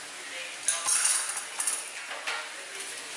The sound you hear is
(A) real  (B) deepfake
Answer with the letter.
A